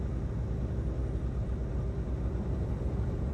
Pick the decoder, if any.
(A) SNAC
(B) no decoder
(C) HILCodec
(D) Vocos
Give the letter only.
B